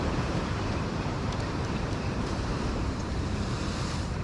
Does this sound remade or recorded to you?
remade